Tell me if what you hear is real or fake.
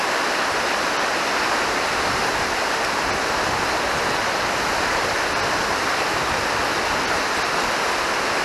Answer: real